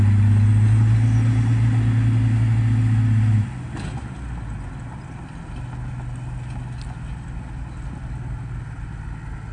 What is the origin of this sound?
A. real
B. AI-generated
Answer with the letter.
A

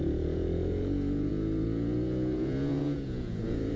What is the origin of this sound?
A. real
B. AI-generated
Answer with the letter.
B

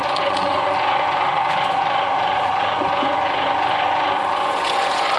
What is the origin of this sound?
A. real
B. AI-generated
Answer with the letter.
B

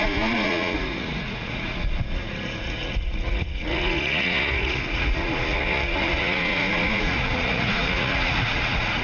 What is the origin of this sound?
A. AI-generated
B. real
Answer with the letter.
A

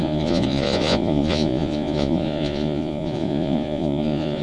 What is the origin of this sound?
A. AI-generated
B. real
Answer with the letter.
A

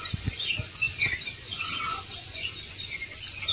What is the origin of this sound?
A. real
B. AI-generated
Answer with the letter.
B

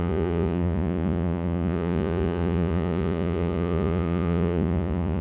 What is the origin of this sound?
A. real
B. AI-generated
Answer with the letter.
B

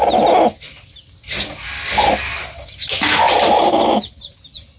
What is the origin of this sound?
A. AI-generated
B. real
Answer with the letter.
B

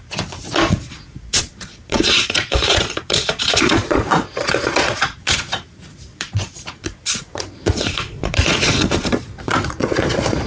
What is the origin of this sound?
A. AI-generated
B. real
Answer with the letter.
A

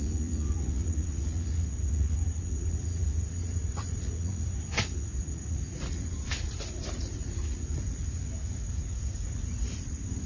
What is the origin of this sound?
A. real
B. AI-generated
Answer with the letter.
B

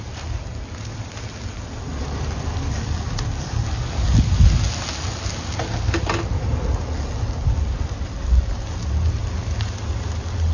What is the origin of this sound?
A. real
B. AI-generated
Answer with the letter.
A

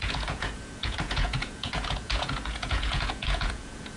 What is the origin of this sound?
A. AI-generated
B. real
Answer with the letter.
A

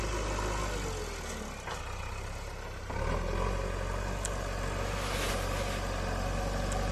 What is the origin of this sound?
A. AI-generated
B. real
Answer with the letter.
B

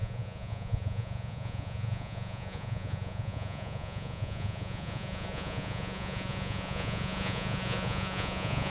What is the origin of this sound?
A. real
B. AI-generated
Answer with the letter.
B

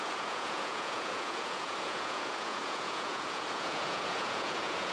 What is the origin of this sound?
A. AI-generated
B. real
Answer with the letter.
A